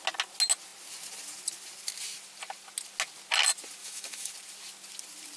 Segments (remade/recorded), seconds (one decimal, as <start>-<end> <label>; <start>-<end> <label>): 0.0-3.8 recorded; 3.8-4.3 remade; 4.3-5.4 recorded